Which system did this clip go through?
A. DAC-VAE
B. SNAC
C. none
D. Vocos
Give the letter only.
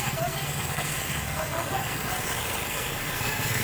B